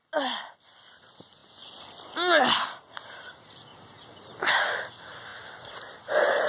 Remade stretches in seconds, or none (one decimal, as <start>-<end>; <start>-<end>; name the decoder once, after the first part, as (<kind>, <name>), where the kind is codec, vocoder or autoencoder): none